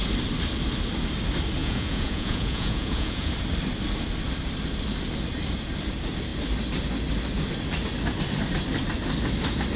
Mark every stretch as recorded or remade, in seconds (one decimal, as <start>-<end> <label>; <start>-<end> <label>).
0.0-1.6 recorded; 1.6-3.3 remade; 3.3-9.8 recorded